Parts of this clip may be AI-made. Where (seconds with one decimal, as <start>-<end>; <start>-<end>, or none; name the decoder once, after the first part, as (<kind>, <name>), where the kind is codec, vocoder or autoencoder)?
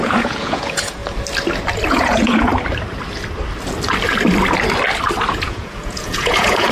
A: 0.0-1.0 (vocoder, Vocos); 1.9-2.5; 5.3-6.7